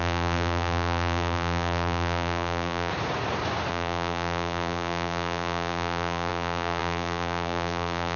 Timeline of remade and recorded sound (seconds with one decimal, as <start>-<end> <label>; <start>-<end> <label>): 0.0-2.9 remade; 2.9-3.7 recorded; 3.7-8.2 remade